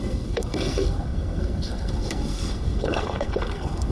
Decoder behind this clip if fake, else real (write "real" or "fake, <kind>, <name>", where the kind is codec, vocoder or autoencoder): fake, codec, SNAC